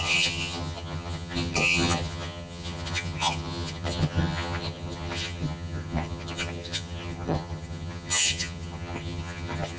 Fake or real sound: fake